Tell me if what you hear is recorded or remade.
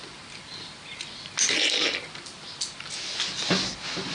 recorded